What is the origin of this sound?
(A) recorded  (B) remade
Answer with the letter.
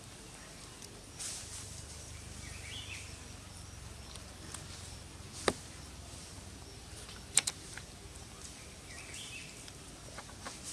A